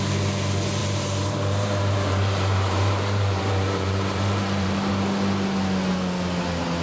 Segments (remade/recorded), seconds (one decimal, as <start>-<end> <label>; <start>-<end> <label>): 0.0-0.8 recorded; 0.8-4.9 remade; 4.9-6.8 recorded